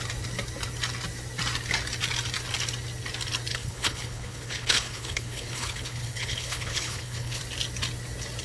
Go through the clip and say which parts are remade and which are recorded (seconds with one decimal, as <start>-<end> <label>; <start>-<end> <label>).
0.0-3.5 recorded; 3.5-7.4 remade; 7.4-8.4 recorded